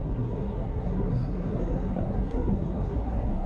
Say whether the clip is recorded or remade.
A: remade